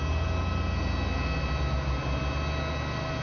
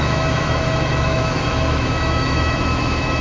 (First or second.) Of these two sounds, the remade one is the second